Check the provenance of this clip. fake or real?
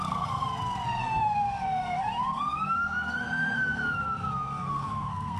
fake